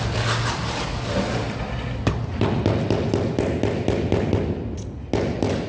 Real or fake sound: real